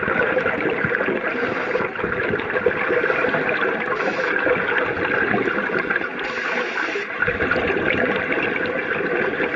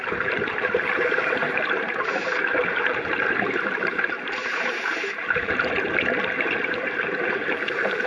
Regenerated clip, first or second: second